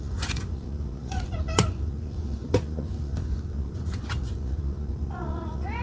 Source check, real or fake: fake